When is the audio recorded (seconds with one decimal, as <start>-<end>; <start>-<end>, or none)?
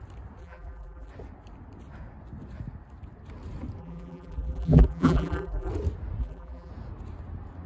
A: 0.0-0.4; 1.1-3.8; 5.7-6.2; 6.7-7.7